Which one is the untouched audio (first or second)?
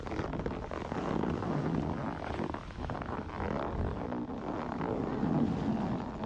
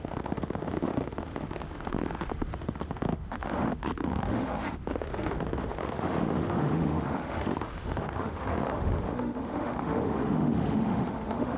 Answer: first